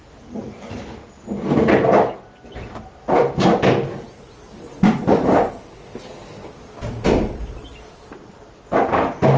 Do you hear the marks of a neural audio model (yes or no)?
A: no